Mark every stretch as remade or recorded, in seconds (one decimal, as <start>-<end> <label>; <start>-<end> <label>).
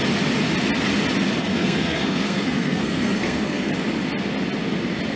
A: 0.0-1.4 recorded; 1.4-3.7 remade; 3.7-5.2 recorded